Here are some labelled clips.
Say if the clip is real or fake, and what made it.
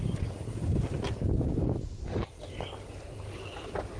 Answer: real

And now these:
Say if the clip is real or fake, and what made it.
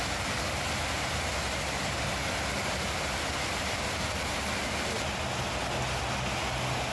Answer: real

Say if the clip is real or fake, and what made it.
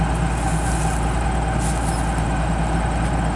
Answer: real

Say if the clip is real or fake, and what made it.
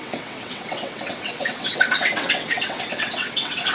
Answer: fake, vocoder, WaveNeXt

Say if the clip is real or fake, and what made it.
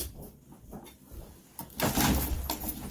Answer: real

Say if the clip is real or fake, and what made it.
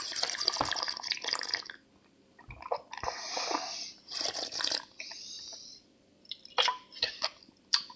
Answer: fake, vocoder, BigVGAN v2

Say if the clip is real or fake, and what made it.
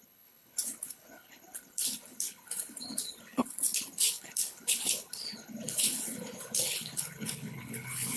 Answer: fake, codec, HILCodec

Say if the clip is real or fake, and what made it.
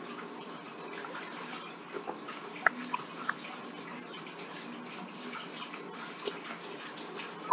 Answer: real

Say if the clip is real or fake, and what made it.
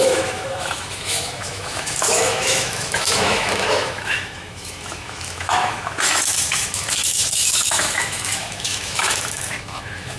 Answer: fake, autoencoder, DAC-VAE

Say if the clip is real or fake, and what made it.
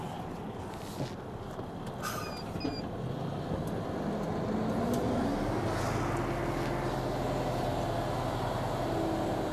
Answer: real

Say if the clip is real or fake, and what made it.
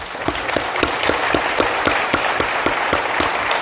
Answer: real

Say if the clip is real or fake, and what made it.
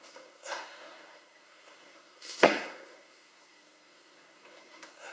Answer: fake, codec, SNAC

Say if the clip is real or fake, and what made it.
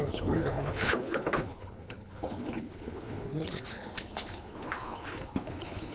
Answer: fake, codec, HILCodec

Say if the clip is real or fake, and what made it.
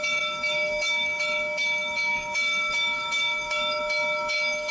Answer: fake, autoencoder, DAC-VAE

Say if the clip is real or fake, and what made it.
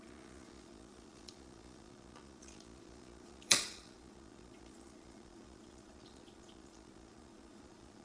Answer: fake, vocoder, Vocos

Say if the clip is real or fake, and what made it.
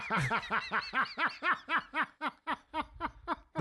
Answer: real